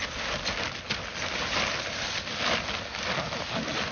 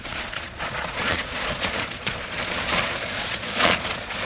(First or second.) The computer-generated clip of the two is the second